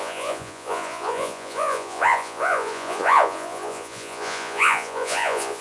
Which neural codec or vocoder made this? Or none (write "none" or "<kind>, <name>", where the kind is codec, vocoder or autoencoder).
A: vocoder, Vocos